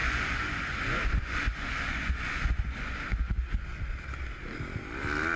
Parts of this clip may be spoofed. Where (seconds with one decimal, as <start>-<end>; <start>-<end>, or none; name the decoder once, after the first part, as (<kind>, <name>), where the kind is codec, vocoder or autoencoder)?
0.0-3.0 (vocoder, Vocos)

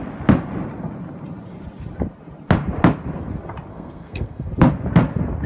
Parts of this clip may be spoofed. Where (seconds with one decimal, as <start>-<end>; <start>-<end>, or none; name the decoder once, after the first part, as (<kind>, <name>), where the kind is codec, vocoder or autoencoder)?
3.7-4.5 (codec, SNAC)

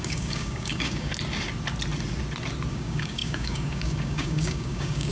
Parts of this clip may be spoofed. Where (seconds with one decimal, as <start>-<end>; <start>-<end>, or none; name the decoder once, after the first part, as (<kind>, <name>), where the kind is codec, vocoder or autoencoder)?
0.0-1.1 (codec, DAC); 2.7-5.1

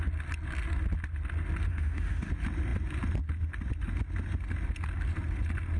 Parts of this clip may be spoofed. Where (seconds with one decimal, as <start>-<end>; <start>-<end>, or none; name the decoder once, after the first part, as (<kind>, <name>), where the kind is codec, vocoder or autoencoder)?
1.7-2.3 (autoencoder, DAC-VAE)

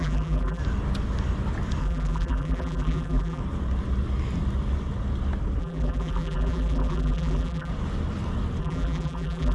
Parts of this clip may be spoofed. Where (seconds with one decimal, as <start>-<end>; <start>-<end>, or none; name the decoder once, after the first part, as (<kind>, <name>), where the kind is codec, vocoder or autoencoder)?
0.0-0.6 (vocoder, BigVGAN v2); 1.8-3.4; 5.6-7.7; 8.6-9.5